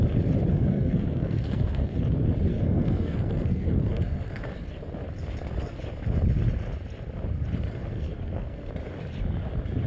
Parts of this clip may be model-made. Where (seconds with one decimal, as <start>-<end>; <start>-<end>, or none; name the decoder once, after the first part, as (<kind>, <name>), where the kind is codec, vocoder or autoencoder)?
0.5-2.0 (codec, SNAC); 2.5-4.4; 7.8-8.7